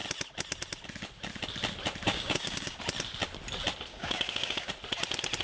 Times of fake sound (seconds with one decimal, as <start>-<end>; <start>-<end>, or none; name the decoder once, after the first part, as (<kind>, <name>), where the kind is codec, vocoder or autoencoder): 2.1-2.8 (codec, DAC); 3.9-4.7